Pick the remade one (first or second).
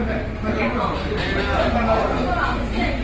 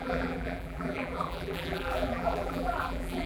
second